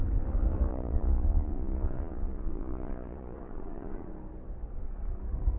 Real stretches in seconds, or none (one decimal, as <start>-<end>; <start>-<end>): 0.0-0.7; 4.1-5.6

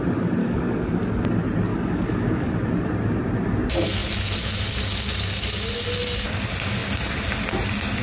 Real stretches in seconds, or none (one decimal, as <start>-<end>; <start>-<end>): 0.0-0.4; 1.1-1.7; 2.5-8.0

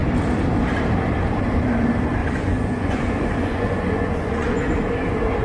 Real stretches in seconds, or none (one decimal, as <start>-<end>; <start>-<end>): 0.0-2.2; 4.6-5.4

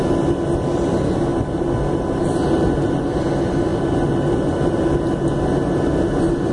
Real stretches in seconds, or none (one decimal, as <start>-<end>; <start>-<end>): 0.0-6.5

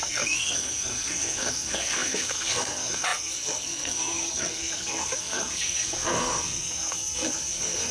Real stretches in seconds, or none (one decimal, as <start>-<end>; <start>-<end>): none